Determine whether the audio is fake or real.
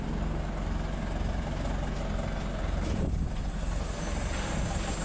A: real